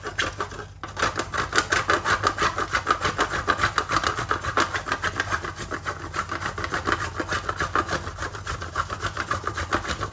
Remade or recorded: recorded